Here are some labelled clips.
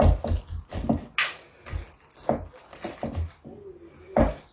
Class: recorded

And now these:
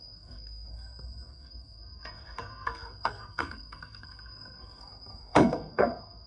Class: remade